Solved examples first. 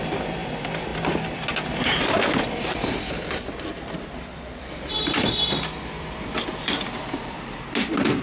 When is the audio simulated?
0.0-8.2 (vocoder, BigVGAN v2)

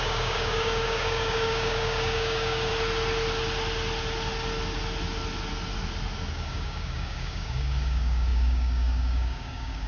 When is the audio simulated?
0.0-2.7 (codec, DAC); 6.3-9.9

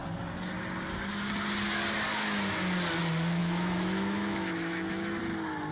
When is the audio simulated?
3.4-5.2 (autoencoder, DAC-VAE)

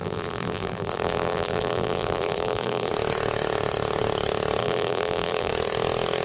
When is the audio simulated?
0.0-2.9 (vocoder, BigVGAN v2); 4.6-5.5